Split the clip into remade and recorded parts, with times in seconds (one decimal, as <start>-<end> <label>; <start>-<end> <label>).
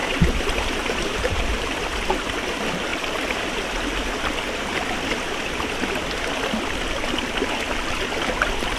0.0-1.4 remade; 1.4-8.8 recorded